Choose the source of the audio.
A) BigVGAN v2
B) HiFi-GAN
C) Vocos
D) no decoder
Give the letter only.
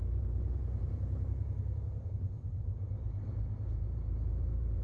A